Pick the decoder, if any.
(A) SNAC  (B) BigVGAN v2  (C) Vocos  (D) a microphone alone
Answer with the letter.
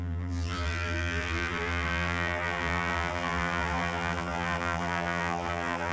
B